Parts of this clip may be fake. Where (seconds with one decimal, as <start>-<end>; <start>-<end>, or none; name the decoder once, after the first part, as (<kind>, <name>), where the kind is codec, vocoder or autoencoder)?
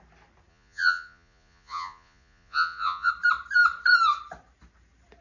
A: 0.5-3.1 (vocoder, Vocos)